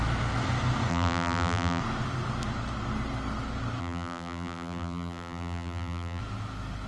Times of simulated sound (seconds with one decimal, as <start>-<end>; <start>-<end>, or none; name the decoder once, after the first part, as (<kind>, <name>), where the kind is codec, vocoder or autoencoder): 0.9-1.8 (vocoder, BigVGAN v2); 3.8-6.2